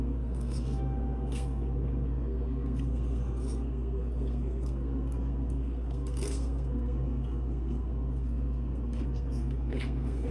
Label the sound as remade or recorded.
remade